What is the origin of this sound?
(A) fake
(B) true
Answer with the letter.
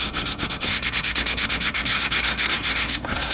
A